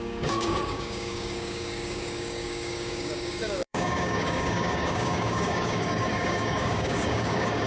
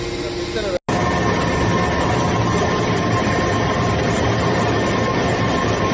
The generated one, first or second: first